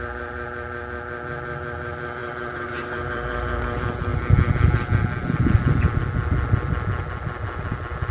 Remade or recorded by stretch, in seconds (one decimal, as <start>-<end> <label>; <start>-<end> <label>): 0.0-2.2 recorded; 2.2-3.6 remade; 3.6-8.1 recorded